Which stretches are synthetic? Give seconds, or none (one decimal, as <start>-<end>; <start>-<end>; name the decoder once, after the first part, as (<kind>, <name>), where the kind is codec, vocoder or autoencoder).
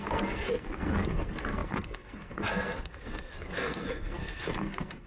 0.0-5.1 (codec, SNAC)